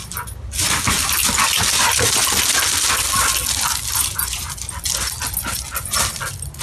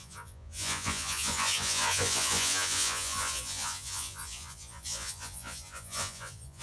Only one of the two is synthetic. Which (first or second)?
second